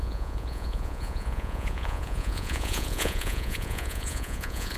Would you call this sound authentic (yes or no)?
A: no